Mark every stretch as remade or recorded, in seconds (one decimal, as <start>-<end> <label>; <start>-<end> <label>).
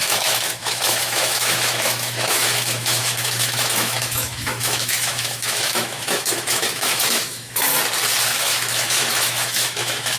0.0-7.7 remade; 7.7-8.4 recorded; 8.4-10.2 remade